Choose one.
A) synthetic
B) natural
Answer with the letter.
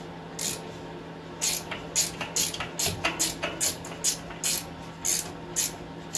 B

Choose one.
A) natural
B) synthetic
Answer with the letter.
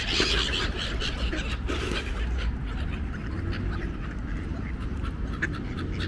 A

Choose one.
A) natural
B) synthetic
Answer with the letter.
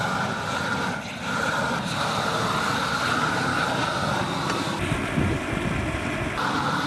A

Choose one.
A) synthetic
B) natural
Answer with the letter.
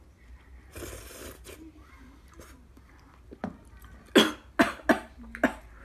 B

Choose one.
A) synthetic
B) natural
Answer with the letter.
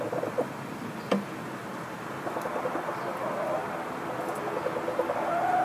B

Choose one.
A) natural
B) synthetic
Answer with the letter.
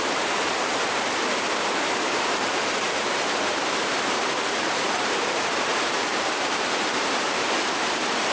B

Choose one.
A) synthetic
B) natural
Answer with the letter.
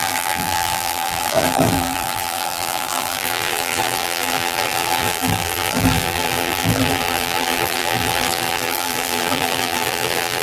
A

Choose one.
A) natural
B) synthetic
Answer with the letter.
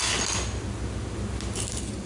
A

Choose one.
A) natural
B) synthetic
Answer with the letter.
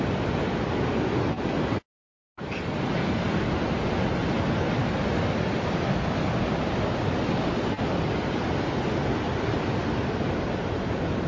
A